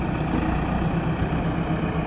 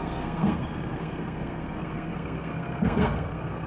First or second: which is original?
first